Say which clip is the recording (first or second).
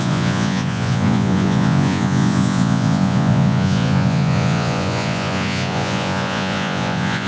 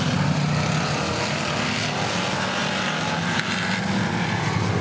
second